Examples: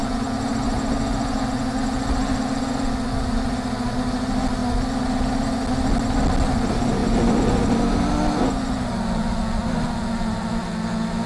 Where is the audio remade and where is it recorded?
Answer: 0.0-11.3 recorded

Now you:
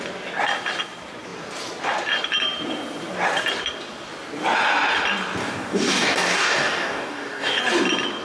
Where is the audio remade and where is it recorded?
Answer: 0.0-5.4 recorded; 5.4-7.6 remade; 7.6-8.2 recorded

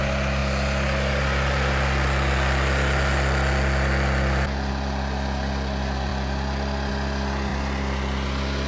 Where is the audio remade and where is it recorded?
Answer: 0.0-8.7 recorded

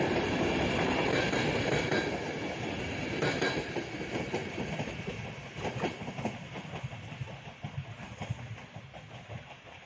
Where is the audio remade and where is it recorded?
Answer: 0.0-4.4 remade; 4.4-6.1 recorded; 6.1-7.8 remade; 7.8-9.9 recorded